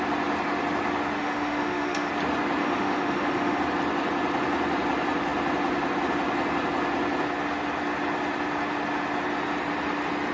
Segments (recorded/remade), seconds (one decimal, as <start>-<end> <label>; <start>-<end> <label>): 0.0-1.2 recorded; 1.2-2.1 remade; 2.1-2.6 recorded; 2.6-3.6 remade; 3.6-10.3 recorded